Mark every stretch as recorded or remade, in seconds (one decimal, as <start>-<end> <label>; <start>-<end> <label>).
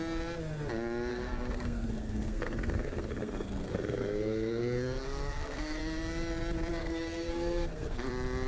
0.0-1.1 recorded; 1.1-5.8 remade; 5.8-6.8 recorded; 6.8-8.1 remade; 8.1-8.5 recorded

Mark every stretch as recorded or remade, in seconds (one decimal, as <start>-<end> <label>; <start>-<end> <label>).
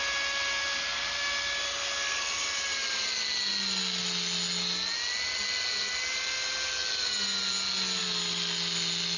0.0-9.2 recorded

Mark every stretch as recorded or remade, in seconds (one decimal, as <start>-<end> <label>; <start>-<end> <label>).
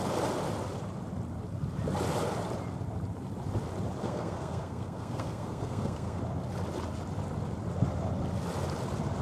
0.0-4.0 recorded; 4.0-6.2 remade; 6.2-9.2 recorded